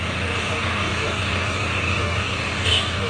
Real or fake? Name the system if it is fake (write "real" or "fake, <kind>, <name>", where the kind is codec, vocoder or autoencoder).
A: fake, codec, DAC